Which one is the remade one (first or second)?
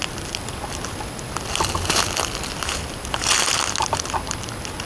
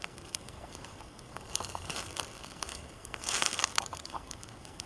second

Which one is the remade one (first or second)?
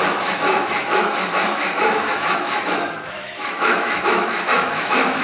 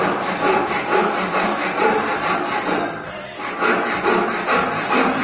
first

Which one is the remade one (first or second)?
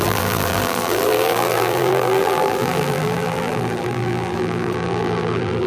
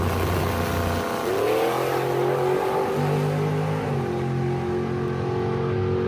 first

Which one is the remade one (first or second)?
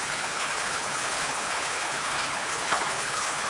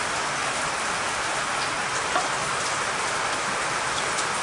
first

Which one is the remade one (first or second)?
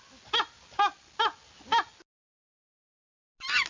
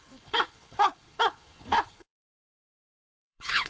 second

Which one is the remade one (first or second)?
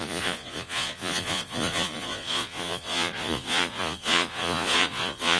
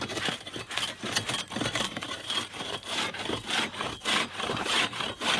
first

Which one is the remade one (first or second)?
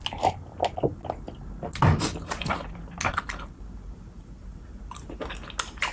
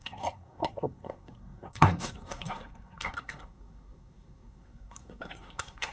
second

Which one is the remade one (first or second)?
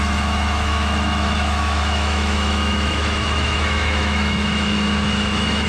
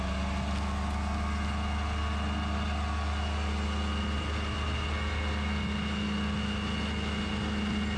first